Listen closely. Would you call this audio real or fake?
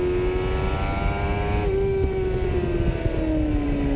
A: real